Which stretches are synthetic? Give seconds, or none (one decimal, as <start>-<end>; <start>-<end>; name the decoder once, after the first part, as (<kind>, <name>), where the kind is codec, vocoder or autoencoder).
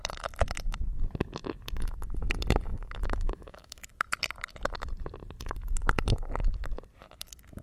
2.7-3.9 (autoencoder, DAC-VAE)